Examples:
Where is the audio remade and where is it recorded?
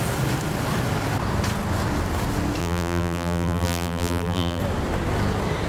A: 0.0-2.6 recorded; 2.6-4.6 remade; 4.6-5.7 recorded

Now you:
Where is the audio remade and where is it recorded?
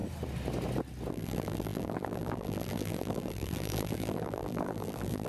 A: 0.0-1.1 recorded; 1.1-5.3 remade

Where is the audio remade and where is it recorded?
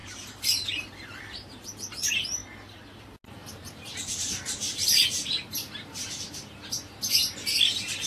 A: 0.0-1.6 remade; 1.6-3.4 recorded; 3.4-7.5 remade; 7.5-8.1 recorded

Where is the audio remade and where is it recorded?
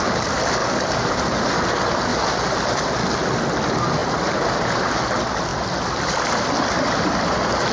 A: 0.0-0.6 recorded; 0.6-1.6 remade; 1.6-4.0 recorded; 4.0-5.0 remade; 5.0-7.7 recorded